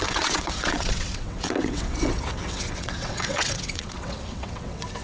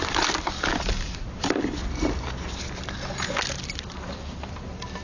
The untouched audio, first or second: second